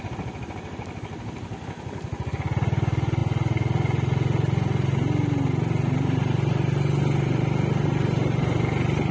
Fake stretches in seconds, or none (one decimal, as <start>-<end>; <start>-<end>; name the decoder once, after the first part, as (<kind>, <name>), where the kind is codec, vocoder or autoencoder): none